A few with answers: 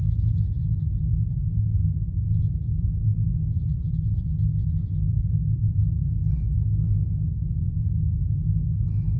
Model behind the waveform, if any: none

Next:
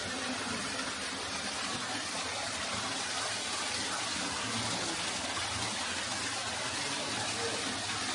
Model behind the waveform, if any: none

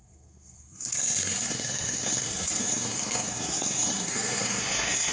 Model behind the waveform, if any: codec, SNAC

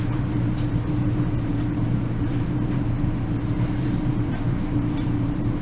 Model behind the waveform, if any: vocoder, BigVGAN v2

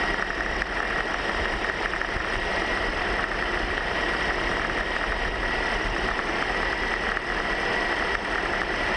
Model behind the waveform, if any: none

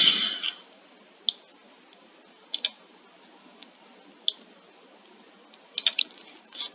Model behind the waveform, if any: none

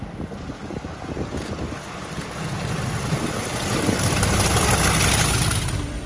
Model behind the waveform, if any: none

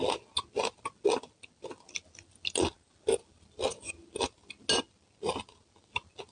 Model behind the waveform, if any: none